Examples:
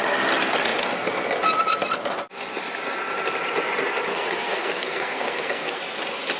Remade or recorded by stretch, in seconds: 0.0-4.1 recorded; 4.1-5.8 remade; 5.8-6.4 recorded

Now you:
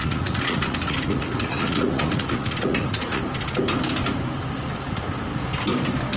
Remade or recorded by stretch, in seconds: 0.0-3.2 remade; 3.2-6.2 recorded

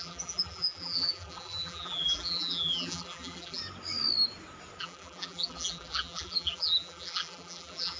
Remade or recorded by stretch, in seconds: 0.0-3.6 remade; 3.6-4.8 recorded; 4.8-8.0 remade

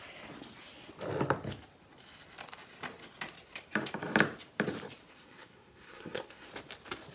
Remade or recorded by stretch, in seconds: 0.0-5.1 recorded; 5.1-6.5 remade; 6.5-7.1 recorded

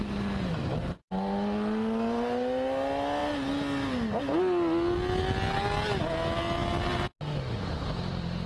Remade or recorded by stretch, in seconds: 0.0-8.5 recorded

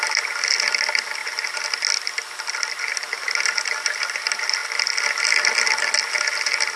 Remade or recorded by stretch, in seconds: 0.0-6.8 recorded